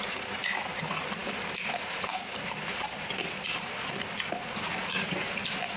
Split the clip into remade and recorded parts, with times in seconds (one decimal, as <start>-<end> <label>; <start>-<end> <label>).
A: 0.0-5.8 recorded